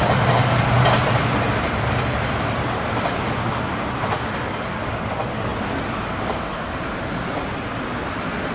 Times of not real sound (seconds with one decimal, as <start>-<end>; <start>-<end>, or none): none